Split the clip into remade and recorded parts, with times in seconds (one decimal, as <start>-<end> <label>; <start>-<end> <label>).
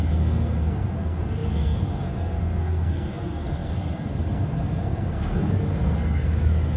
0.0-6.8 remade